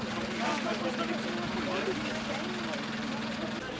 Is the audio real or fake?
real